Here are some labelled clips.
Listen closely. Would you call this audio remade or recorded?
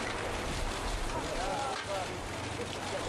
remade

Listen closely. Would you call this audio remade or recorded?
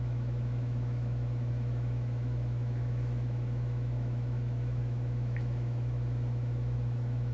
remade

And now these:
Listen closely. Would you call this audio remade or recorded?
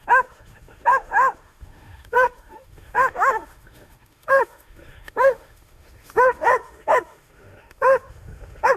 remade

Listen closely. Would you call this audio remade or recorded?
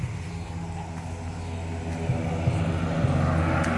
recorded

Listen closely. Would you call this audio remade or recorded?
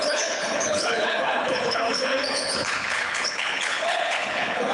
remade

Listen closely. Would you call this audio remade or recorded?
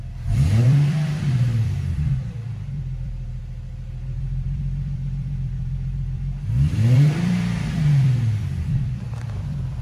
remade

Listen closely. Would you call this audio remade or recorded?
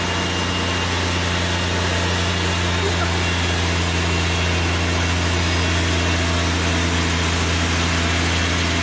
recorded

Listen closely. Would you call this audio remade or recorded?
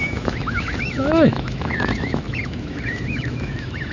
remade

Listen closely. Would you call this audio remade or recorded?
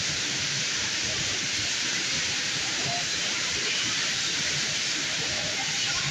remade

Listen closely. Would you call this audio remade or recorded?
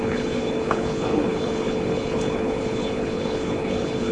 remade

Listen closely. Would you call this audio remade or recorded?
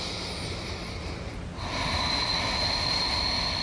recorded